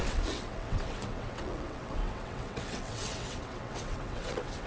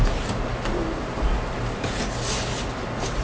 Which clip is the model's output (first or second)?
first